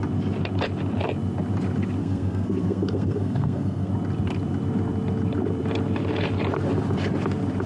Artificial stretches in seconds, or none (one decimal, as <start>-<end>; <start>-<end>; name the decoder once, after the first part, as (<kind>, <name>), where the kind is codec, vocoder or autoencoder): 2.0-3.9 (codec, SNAC)